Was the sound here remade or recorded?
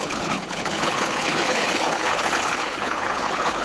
remade